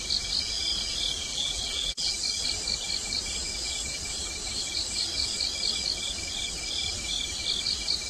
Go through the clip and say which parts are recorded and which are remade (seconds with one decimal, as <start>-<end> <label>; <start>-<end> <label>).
0.0-1.3 recorded; 1.3-2.1 remade; 2.1-8.1 recorded